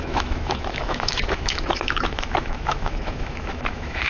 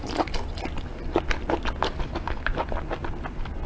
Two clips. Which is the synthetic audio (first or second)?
first